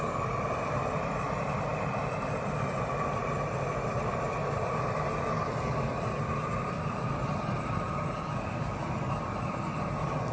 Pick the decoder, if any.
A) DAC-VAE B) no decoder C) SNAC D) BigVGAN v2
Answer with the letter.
D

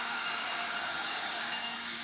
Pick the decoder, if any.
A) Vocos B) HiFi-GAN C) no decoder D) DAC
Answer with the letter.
D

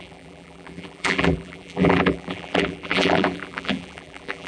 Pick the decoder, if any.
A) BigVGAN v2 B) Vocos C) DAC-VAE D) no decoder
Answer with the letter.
A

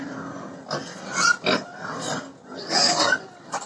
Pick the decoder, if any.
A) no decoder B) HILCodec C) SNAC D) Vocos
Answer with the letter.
A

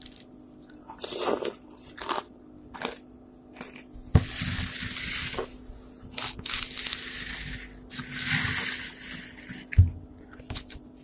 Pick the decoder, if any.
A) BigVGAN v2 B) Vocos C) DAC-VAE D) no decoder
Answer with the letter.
D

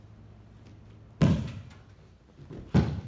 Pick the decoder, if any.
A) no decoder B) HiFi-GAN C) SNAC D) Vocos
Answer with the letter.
A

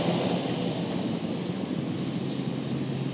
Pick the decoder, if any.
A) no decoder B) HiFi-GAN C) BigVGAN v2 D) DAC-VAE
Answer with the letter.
A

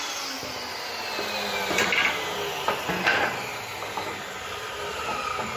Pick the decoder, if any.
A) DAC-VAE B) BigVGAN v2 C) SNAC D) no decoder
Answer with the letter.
D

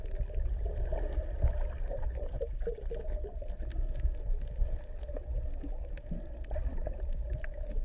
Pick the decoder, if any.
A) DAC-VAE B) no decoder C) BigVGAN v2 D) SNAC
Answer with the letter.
B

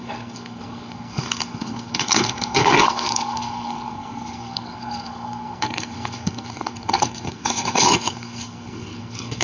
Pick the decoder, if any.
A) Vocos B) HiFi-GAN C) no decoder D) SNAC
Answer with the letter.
D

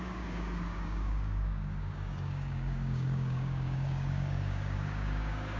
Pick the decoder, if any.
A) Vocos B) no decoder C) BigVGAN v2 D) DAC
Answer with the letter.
D